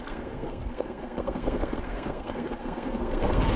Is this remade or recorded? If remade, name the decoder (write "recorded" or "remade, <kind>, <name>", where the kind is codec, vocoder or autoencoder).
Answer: remade, codec, SNAC